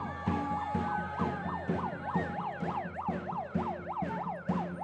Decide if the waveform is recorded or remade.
recorded